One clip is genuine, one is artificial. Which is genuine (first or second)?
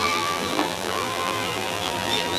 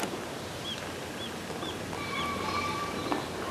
second